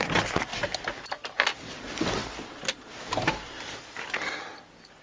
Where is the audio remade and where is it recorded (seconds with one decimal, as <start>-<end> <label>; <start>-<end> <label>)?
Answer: 0.0-5.0 recorded